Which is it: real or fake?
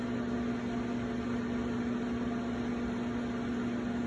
real